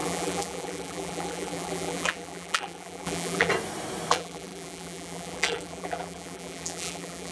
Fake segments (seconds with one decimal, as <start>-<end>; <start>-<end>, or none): 0.0-3.5; 4.1-7.3